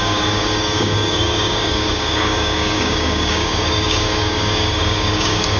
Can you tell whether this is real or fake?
fake